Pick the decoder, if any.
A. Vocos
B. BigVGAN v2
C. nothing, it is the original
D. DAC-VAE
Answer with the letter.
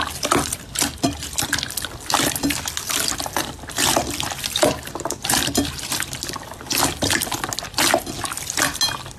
C